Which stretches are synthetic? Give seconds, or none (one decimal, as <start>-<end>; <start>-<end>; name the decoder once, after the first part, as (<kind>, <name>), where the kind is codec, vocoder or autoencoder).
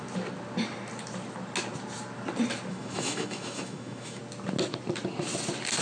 2.7-4.2 (autoencoder, DAC-VAE)